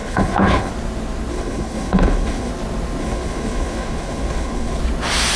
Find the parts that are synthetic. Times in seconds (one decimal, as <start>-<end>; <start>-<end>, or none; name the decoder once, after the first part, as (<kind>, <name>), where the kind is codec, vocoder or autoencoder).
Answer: 0.0-0.7 (codec, HILCodec); 1.3-2.5; 3.0-4.8